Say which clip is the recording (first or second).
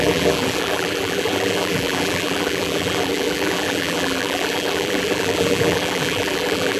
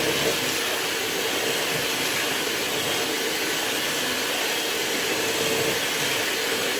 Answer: second